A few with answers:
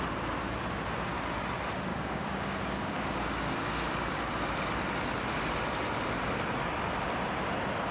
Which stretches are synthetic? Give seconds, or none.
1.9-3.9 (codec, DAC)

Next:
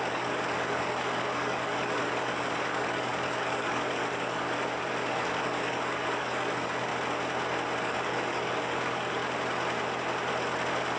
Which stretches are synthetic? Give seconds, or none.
0.0-6.9 (codec, DAC); 7.8-9.2

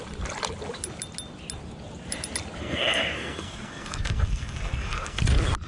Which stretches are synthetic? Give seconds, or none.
2.6-5.2 (codec, SNAC)

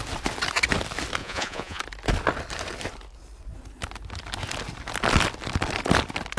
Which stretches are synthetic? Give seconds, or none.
1.2-1.8 (vocoder, Vocos)